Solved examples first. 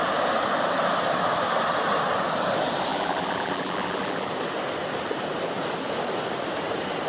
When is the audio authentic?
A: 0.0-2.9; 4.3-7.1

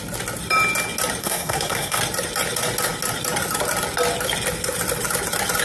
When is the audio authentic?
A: 0.0-1.2; 2.0-5.6

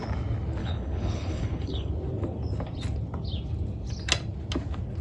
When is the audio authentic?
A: 0.0-0.6; 1.9-5.0

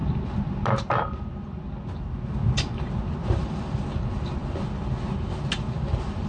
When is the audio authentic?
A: 0.0-6.3

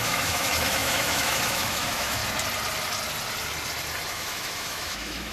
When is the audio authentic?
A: 2.2-4.1

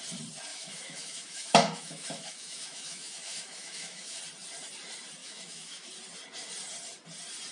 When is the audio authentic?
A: 0.0-0.5; 4.2-5.2; 5.9-7.5